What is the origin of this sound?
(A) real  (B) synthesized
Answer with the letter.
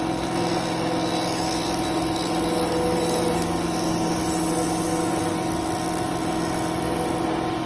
A